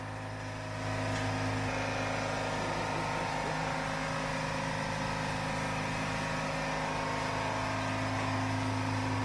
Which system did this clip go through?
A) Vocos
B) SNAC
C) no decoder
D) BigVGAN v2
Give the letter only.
C